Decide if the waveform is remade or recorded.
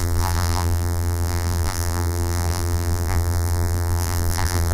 remade